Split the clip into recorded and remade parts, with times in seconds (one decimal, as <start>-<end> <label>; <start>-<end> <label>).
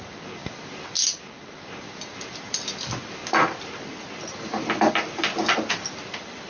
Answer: 0.0-6.5 recorded